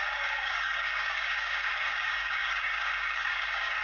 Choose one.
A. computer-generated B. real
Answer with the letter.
A